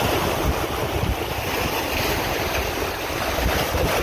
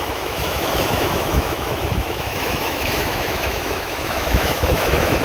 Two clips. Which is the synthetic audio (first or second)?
second